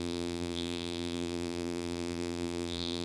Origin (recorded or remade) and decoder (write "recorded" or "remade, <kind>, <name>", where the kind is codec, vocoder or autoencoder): remade, vocoder, BigVGAN v2